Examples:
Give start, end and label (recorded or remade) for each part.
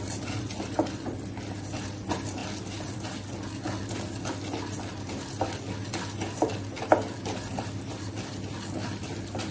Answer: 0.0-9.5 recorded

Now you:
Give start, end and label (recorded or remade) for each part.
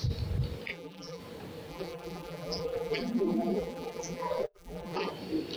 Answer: 0.0-0.7 recorded; 0.7-1.2 remade; 1.2-1.7 recorded; 1.7-5.1 remade; 5.1-5.6 recorded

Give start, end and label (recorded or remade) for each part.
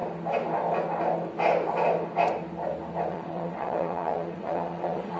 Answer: 0.0-3.1 recorded; 3.1-5.2 remade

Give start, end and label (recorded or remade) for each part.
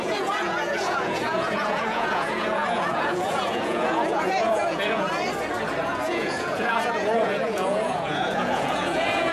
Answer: 0.0-5.1 remade; 5.1-5.8 recorded; 5.8-9.3 remade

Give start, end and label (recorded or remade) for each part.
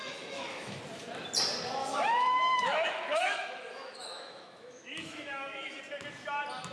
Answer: 0.0-0.8 remade; 0.8-1.8 recorded; 1.8-5.8 remade; 5.8-6.7 recorded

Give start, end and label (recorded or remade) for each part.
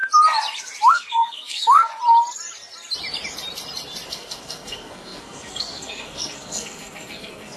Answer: 0.0-0.9 recorded; 0.9-1.9 remade; 1.9-4.1 recorded; 4.1-7.6 remade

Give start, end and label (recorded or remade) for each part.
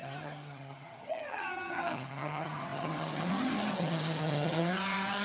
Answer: 0.0-5.2 remade